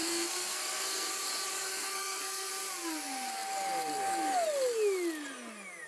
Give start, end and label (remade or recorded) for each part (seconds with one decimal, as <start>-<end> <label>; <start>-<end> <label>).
0.0-1.1 remade; 1.1-1.6 recorded; 1.6-2.5 remade; 2.5-5.9 recorded

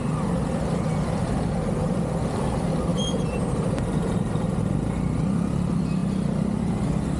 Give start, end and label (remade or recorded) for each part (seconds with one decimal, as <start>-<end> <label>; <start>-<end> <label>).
0.0-7.2 recorded

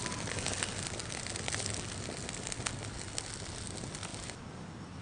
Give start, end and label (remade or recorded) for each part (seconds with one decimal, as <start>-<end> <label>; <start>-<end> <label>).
0.0-5.0 recorded